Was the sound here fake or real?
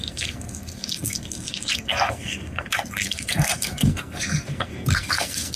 fake